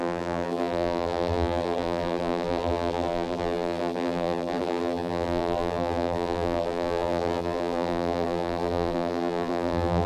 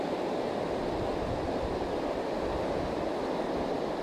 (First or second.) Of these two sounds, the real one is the second